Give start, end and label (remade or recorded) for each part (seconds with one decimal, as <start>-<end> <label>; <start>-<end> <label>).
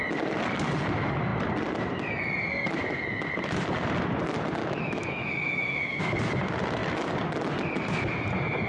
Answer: 0.0-4.6 recorded; 4.6-6.0 remade; 6.0-8.7 recorded